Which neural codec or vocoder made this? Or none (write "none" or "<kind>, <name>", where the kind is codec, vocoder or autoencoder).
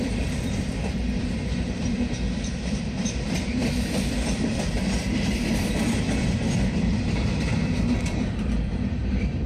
vocoder, BigVGAN v2